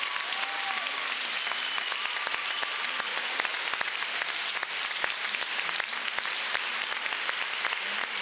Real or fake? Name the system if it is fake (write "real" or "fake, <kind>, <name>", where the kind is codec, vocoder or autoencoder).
real